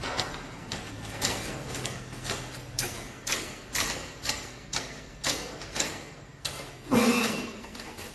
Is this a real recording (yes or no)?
no